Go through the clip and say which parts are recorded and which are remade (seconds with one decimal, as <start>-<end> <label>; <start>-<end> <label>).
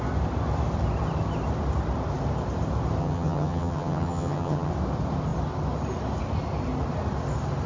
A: 0.0-3.0 recorded; 3.0-4.7 remade; 4.7-7.7 recorded